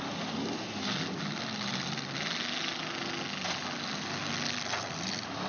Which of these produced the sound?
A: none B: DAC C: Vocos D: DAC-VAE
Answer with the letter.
A